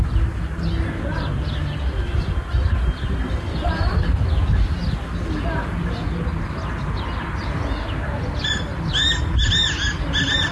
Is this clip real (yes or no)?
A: yes